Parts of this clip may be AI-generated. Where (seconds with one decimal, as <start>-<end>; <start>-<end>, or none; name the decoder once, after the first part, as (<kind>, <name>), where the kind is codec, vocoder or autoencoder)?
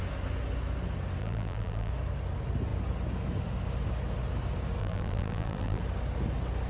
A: 1.2-1.9 (vocoder, BigVGAN v2); 4.8-5.8